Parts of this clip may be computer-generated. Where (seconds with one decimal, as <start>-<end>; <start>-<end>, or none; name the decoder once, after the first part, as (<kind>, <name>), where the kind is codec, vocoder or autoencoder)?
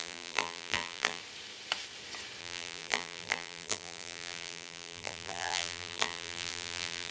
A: 0.0-1.2 (vocoder, BigVGAN v2); 2.4-7.1